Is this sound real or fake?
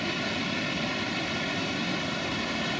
real